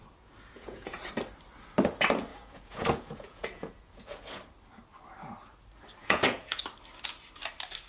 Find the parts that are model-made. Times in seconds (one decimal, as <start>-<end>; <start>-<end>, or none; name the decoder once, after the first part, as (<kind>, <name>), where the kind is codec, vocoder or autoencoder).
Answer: 0.0-1.1 (vocoder, Vocos); 2.3-4.5; 6.0-6.6